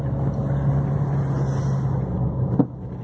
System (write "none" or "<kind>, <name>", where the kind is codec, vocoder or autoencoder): none